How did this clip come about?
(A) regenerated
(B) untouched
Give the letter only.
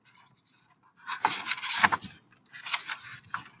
B